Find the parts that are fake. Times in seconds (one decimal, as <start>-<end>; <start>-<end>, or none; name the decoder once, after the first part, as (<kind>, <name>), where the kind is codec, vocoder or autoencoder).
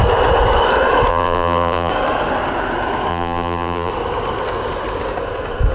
1.1-1.9 (vocoder, BigVGAN v2); 3.1-3.9